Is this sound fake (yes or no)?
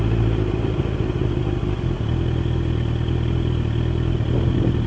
no